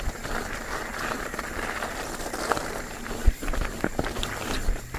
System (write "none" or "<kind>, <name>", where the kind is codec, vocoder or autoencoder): none